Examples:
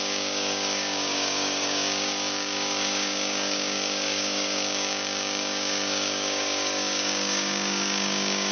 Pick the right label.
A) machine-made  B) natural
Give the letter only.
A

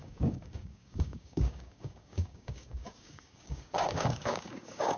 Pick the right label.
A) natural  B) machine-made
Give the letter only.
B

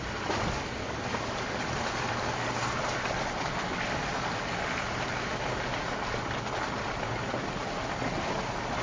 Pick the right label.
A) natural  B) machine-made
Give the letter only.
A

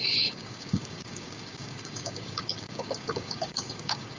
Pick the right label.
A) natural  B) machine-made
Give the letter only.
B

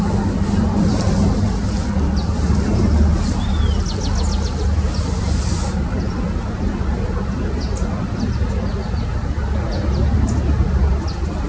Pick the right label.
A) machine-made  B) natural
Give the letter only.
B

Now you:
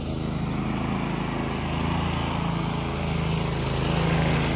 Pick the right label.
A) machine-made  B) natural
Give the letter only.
B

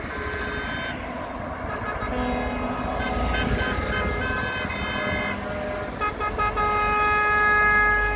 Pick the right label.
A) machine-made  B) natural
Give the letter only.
B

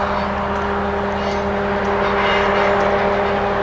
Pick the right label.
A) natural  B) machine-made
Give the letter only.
A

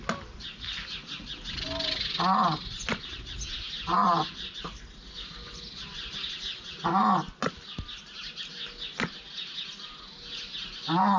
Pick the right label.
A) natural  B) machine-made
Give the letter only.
A